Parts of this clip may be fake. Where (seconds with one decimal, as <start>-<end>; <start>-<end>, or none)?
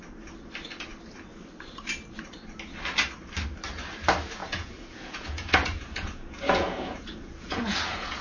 4.4-8.2